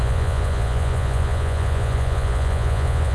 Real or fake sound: fake